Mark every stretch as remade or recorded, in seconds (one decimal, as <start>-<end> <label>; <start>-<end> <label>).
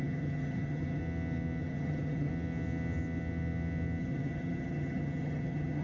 0.0-1.0 remade; 1.0-1.6 recorded; 1.6-2.3 remade; 2.3-4.0 recorded; 4.0-5.8 remade